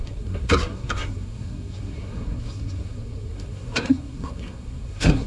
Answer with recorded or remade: remade